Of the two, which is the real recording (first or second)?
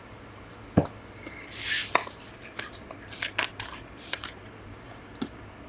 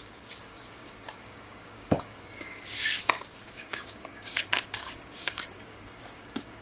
first